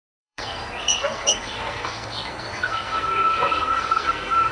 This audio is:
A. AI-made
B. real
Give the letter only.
A